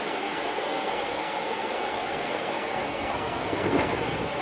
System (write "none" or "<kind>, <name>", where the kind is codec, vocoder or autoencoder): codec, SNAC